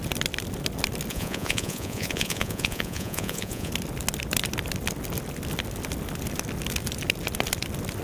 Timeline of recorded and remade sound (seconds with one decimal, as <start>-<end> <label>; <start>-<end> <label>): 0.0-1.1 recorded; 1.1-3.7 remade; 3.7-8.0 recorded